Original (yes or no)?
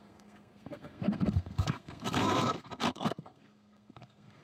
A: no